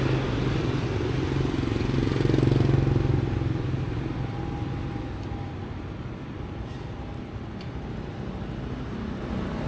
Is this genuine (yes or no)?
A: yes